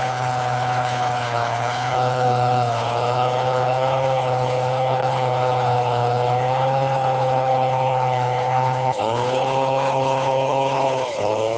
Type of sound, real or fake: fake